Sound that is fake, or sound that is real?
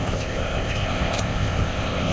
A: fake